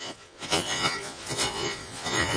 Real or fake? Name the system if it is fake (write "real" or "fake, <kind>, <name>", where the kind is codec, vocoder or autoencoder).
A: fake, vocoder, Vocos